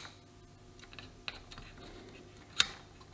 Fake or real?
real